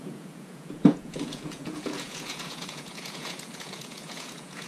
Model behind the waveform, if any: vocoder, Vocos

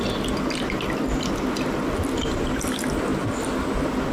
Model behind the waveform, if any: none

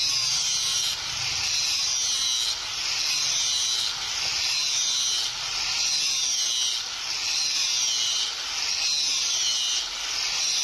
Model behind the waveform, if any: none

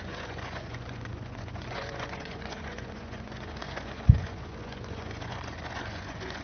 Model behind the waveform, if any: vocoder, Vocos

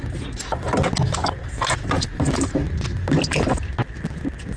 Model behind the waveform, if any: none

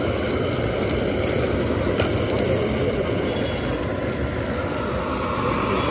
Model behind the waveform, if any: none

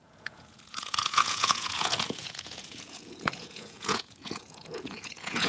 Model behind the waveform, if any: vocoder, Vocos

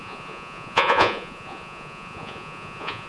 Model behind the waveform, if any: vocoder, Vocos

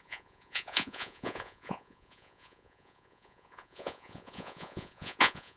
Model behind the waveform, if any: vocoder, Vocos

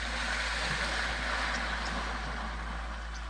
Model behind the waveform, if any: none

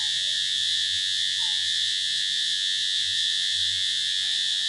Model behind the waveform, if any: vocoder, Vocos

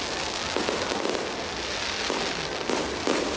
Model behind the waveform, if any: none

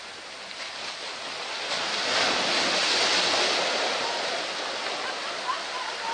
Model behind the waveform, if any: none